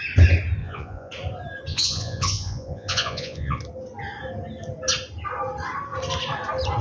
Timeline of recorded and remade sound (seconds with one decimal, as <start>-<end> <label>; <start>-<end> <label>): 0.0-0.6 recorded; 0.6-1.1 remade; 1.1-1.7 recorded; 1.7-3.6 remade; 3.6-6.8 recorded